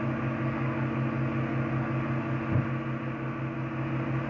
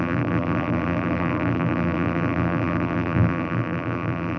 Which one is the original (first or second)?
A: first